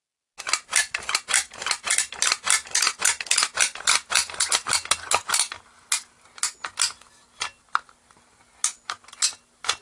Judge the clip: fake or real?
real